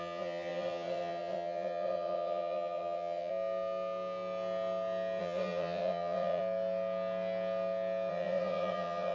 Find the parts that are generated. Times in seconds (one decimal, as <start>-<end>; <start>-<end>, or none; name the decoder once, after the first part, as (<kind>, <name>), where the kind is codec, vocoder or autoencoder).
0.0-3.3 (vocoder, WaveNeXt); 5.2-6.4; 8.1-9.1